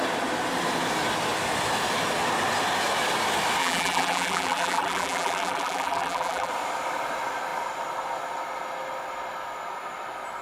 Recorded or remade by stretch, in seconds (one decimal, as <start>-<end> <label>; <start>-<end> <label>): 0.0-3.6 recorded; 3.6-6.5 remade; 6.5-10.4 recorded